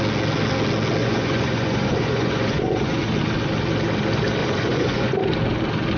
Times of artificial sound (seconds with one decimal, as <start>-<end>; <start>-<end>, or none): 1.0-3.1; 4.4-5.1